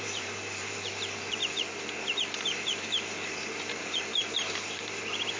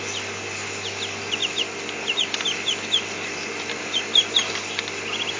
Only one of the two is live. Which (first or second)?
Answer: second